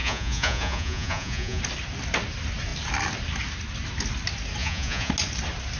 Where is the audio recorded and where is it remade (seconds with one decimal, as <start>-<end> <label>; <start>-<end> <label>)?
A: 0.0-1.6 remade; 1.6-4.6 recorded; 4.6-5.1 remade; 5.1-5.8 recorded

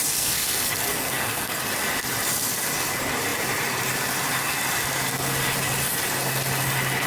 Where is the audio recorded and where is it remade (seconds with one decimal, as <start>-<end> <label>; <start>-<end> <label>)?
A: 0.0-1.6 remade; 1.6-7.1 recorded

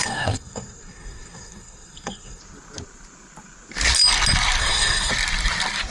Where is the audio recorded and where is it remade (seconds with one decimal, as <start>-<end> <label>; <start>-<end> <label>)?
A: 0.0-2.4 remade; 2.4-4.6 recorded; 4.6-5.1 remade; 5.1-5.9 recorded